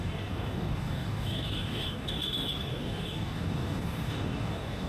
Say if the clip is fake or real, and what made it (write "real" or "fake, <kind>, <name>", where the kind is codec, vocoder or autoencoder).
fake, codec, DAC